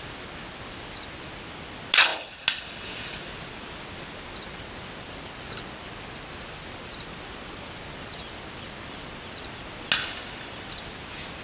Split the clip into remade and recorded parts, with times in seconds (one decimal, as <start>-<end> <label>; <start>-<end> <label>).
0.0-11.4 recorded